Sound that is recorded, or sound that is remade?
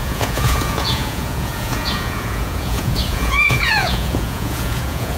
remade